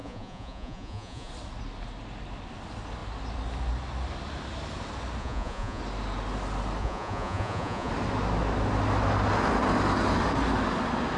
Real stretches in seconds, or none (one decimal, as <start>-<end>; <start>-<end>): 1.3-5.2; 5.8-6.8; 7.9-11.2